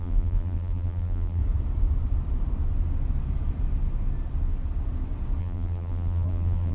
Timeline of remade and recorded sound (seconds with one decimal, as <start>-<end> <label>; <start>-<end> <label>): 0.0-1.4 remade; 1.4-5.4 recorded; 5.4-6.7 remade